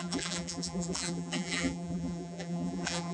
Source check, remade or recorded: remade